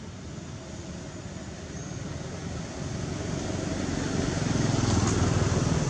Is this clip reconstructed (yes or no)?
no